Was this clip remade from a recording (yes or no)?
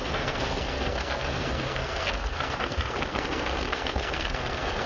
yes